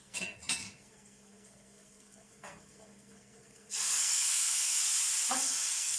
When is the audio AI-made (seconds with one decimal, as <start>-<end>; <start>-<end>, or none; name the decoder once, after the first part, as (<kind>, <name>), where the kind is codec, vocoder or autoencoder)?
0.0-4.8 (codec, SNAC); 5.3-6.0